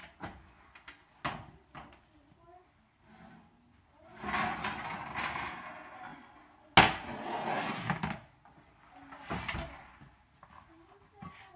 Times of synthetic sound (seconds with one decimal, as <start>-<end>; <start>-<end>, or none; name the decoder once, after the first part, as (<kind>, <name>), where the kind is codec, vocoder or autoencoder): none